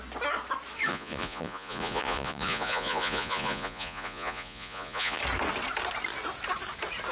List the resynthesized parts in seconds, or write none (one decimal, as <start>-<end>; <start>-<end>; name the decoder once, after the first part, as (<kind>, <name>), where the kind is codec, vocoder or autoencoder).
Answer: 0.9-5.2 (vocoder, Vocos)